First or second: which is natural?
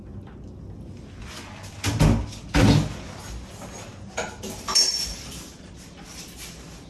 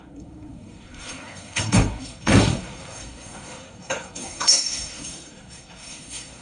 first